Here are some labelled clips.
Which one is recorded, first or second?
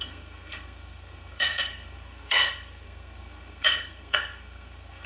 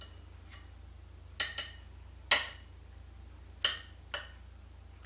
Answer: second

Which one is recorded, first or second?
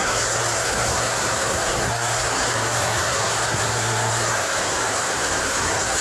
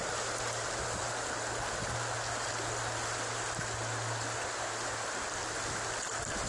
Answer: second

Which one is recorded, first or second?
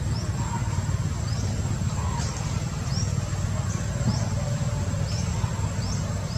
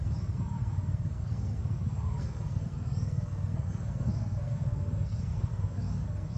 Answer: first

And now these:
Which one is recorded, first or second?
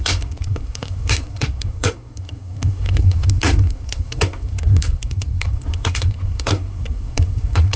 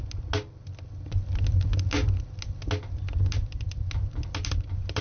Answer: second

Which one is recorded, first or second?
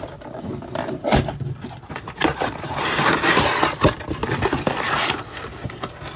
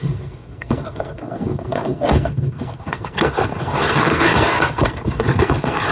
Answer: first